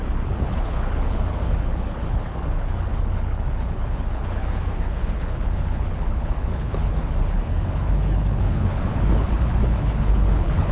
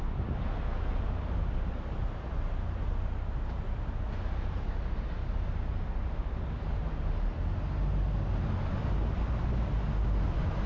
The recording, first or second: second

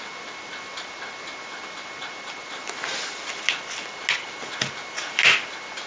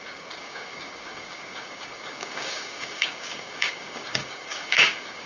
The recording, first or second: first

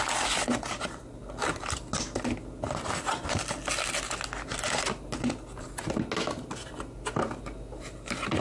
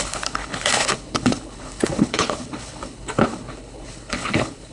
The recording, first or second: first